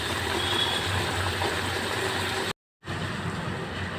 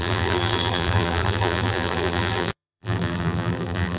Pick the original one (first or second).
first